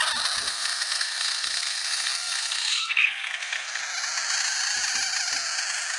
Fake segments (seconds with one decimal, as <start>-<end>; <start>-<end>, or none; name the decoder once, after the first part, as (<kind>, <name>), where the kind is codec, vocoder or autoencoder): 0.5-3.8 (codec, SNAC)